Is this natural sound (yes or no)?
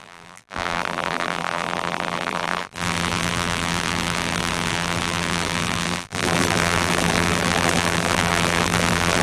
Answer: no